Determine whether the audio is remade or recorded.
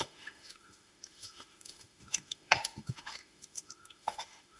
remade